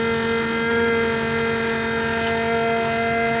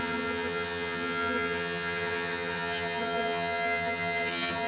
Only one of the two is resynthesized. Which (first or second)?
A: second